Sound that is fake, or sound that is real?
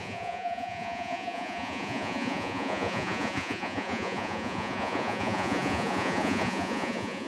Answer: fake